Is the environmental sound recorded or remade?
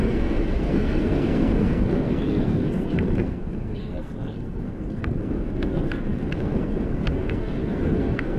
remade